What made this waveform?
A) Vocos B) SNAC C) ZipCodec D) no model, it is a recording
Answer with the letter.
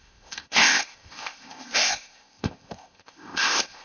C